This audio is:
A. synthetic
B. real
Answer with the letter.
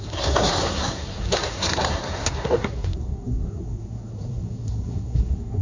A